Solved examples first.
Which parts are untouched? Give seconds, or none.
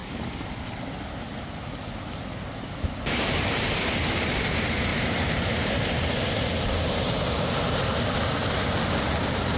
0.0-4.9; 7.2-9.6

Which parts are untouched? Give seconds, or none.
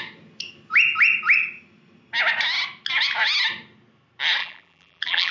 0.0-4.4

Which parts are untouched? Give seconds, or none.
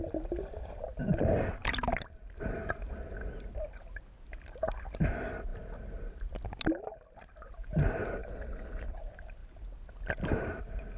0.0-8.2; 9.0-11.0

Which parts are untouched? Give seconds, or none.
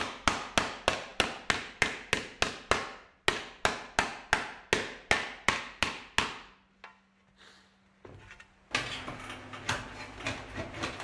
0.0-11.0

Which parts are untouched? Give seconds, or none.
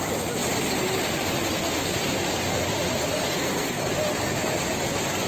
0.0-3.1; 3.9-5.3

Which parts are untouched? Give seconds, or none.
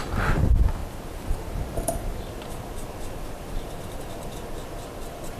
0.0-0.8; 4.0-5.4